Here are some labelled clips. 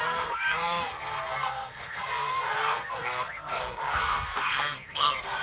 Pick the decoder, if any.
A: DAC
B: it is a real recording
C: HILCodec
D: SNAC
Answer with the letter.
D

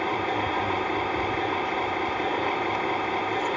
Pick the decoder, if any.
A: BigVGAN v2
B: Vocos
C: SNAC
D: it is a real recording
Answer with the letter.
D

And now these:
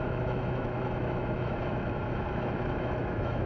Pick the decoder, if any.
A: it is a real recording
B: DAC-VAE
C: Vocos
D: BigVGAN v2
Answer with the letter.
B